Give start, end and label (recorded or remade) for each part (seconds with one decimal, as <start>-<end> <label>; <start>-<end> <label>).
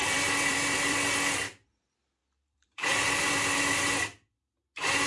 0.0-1.1 remade; 1.1-2.2 recorded; 2.2-3.8 remade; 3.8-5.1 recorded